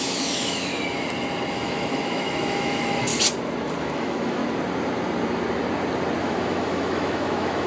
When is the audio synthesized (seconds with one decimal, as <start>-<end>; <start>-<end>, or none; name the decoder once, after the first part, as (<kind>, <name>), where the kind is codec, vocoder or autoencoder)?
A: 0.0-0.7 (autoencoder, DAC-VAE); 1.5-3.1; 3.8-4.4; 6.2-7.7